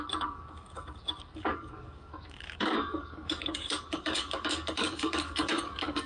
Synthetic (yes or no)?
yes